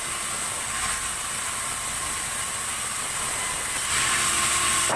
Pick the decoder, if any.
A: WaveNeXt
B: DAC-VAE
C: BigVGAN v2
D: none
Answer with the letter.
D